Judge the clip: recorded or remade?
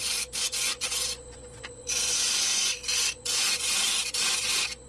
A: remade